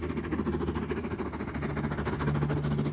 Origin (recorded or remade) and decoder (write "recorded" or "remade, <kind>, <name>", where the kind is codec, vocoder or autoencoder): recorded